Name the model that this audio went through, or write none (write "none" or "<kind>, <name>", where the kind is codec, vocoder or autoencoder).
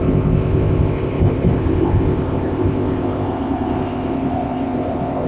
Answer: codec, ZipCodec